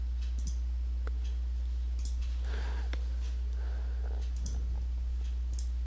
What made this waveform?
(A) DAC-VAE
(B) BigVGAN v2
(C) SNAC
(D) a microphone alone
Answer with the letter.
D